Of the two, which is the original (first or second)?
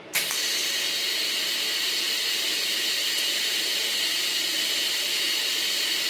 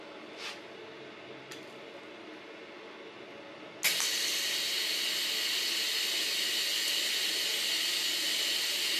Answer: second